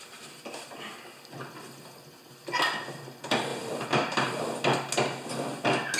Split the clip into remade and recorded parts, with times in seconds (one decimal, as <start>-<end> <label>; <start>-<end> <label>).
0.0-3.5 recorded; 3.5-4.4 remade; 4.4-6.0 recorded